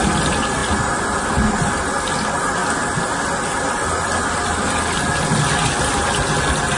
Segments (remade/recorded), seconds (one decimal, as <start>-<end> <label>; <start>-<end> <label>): 0.0-6.8 recorded